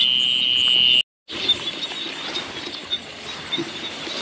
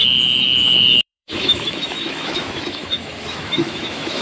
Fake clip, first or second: second